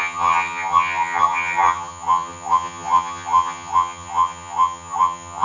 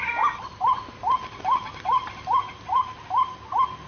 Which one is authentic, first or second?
second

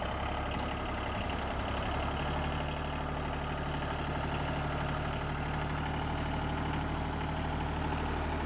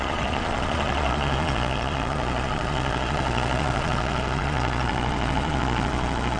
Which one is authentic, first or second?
first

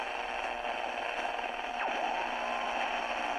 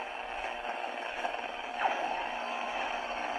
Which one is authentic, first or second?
first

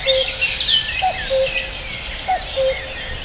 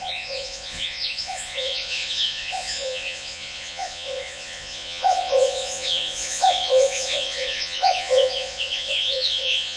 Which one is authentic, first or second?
first